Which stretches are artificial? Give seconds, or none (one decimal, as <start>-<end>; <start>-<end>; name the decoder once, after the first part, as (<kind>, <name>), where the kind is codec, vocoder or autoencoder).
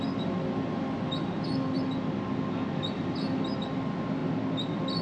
none